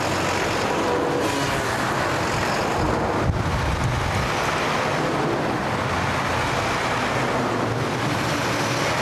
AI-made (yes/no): no